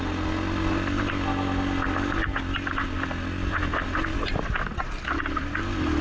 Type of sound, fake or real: real